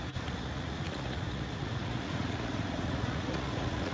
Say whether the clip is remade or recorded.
remade